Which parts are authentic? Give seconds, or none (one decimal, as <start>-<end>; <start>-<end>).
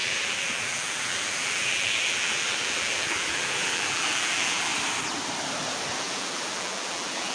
4.7-6.0